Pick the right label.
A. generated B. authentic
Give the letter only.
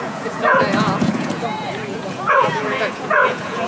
A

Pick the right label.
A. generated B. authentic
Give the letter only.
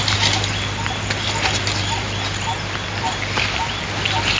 B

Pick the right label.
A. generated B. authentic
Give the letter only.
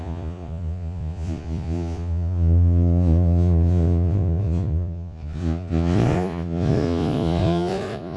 A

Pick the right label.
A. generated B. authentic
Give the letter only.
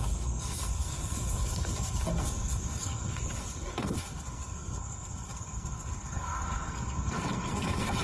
A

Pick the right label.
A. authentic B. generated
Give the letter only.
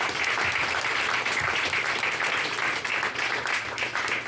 A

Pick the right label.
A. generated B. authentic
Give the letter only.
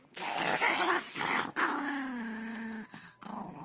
B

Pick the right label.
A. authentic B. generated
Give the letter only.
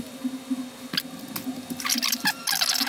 A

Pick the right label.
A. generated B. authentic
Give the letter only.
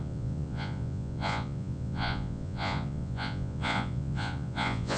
A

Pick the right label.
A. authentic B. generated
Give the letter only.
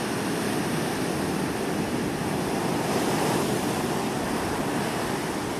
A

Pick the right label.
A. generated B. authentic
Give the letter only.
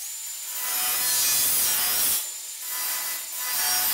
B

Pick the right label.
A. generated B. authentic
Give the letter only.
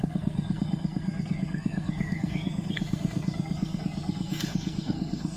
A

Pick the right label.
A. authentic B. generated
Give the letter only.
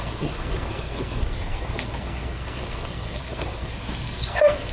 B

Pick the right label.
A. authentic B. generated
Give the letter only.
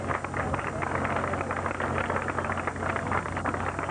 A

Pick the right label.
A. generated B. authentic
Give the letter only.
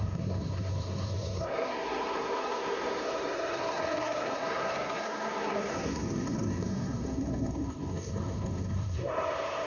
A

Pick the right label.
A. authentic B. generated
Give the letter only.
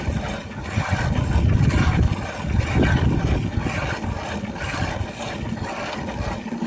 A